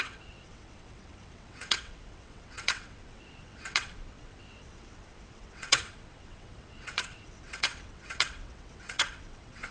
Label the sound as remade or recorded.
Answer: remade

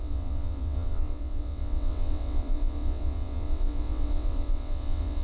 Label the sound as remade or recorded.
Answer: remade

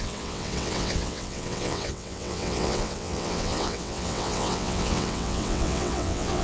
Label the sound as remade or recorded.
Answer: remade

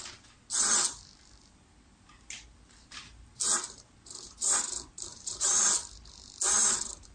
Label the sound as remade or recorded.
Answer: recorded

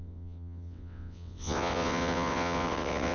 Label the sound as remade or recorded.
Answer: remade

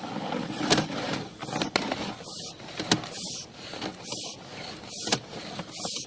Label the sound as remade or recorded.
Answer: recorded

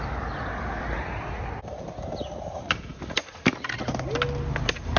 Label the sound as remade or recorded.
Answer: recorded